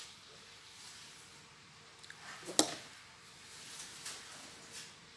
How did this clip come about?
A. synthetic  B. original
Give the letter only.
B